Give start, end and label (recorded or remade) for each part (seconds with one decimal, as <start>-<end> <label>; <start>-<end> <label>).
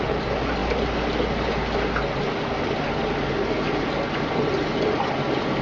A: 0.0-5.6 recorded